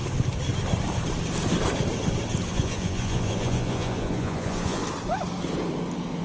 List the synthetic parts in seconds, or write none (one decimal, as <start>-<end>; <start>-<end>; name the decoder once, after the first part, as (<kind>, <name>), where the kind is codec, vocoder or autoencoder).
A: 2.5-4.8 (vocoder, Vocos)